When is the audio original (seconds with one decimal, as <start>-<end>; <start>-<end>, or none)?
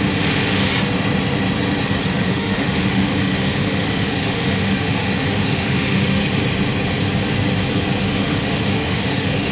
0.7-2.3; 6.2-8.0